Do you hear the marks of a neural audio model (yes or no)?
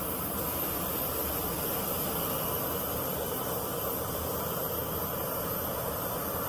no